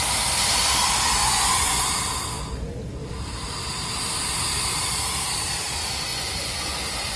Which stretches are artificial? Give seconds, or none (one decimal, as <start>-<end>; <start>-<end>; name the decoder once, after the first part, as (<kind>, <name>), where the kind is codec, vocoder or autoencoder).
1.2-1.9 (vocoder, Vocos); 6.1-6.8